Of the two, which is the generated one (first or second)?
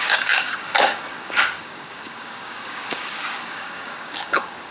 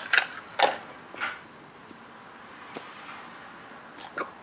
first